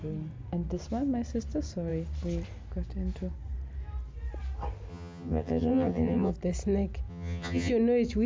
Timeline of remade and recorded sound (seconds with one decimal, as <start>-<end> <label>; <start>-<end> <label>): 0.0-4.9 recorded; 4.9-6.3 remade; 6.3-7.1 recorded; 7.1-7.7 remade; 7.7-8.3 recorded

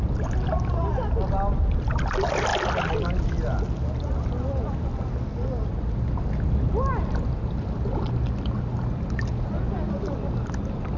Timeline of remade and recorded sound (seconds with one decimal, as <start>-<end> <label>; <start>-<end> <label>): 0.0-11.0 recorded

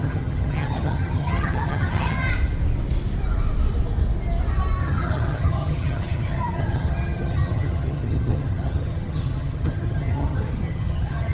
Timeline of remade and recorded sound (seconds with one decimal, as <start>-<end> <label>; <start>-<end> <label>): 0.0-2.3 remade; 2.3-4.8 recorded; 4.8-11.3 remade